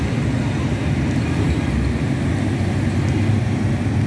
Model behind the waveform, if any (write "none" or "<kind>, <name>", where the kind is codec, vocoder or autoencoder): none